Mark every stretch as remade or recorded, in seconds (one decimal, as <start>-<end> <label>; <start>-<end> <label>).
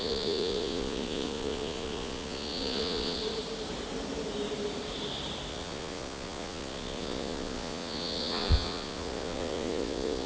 0.0-3.2 remade; 3.2-5.5 recorded; 5.5-10.3 remade